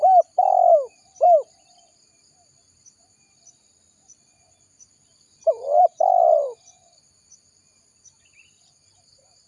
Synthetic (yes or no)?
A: no